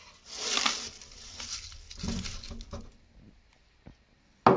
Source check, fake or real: real